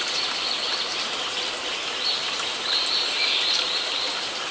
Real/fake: real